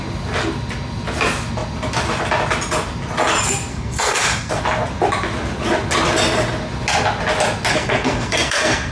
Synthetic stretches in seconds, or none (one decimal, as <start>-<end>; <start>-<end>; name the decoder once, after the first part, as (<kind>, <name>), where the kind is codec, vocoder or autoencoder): 3.7-4.6 (codec, SNAC); 7.7-8.9